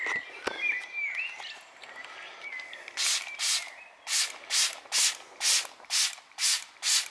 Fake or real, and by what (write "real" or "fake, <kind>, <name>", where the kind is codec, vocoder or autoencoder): real